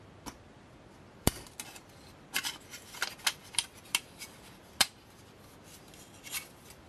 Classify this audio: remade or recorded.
recorded